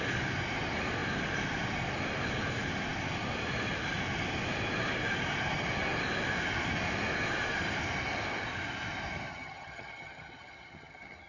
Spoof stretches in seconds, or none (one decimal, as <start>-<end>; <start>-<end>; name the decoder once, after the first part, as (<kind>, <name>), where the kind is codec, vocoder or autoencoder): 9.3-11.3 (vocoder, HiFi-GAN)